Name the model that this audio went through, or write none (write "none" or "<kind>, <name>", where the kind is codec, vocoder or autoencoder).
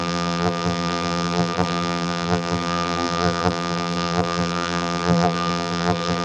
vocoder, BigVGAN v2